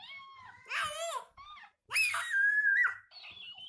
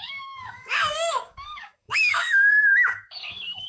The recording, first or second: first